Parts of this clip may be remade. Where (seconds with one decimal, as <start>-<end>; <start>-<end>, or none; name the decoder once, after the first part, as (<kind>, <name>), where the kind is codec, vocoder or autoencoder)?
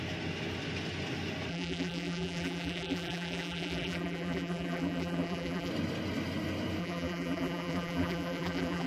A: 1.5-5.7 (vocoder, BigVGAN v2); 6.8-8.9